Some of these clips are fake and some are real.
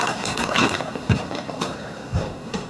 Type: fake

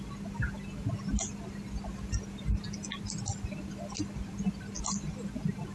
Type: real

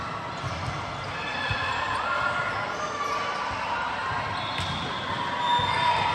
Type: real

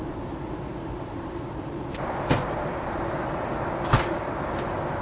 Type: real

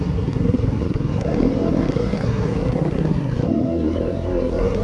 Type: fake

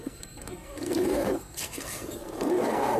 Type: fake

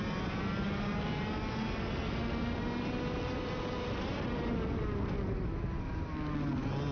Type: real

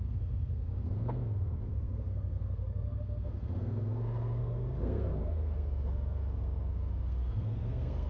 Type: fake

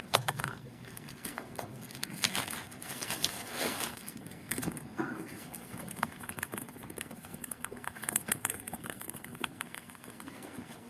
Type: fake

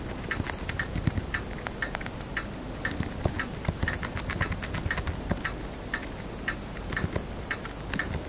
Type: real